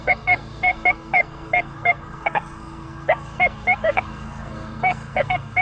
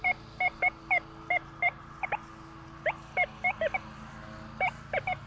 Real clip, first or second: second